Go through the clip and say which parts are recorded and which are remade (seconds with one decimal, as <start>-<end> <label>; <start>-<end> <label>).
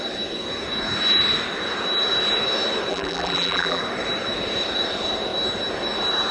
0.0-2.9 recorded; 2.9-3.8 remade; 3.8-6.3 recorded